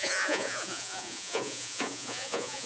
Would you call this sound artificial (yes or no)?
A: yes